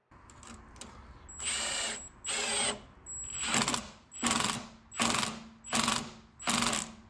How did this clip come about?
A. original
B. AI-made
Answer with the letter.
A